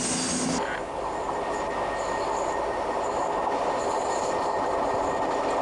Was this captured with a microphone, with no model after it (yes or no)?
yes